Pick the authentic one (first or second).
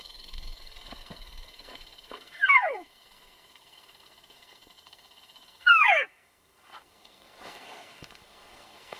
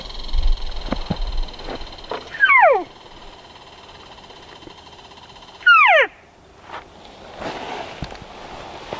second